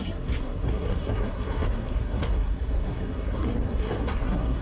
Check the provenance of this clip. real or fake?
fake